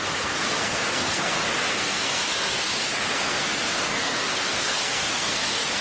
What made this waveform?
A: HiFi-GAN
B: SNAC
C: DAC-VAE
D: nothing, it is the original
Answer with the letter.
B